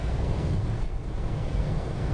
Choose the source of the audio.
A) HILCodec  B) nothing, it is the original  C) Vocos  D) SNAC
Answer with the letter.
D